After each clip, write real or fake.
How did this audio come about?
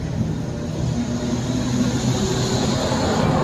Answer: real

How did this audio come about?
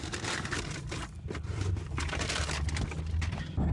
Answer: fake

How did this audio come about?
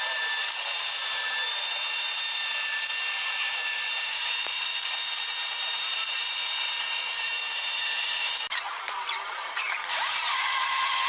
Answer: fake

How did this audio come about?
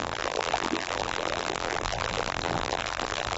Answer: fake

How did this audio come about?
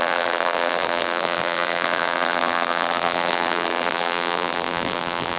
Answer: fake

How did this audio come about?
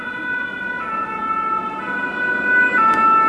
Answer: real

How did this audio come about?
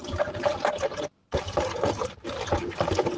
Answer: fake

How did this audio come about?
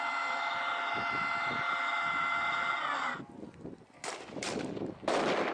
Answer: real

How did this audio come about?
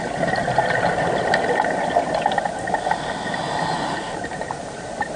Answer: real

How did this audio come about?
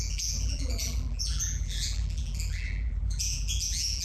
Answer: fake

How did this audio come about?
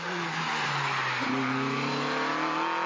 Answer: real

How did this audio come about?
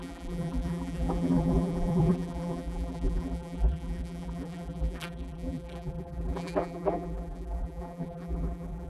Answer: fake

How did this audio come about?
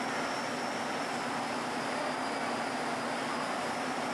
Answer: real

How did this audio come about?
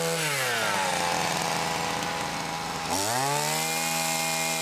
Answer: real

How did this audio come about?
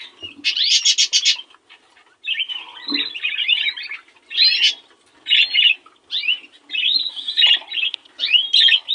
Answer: real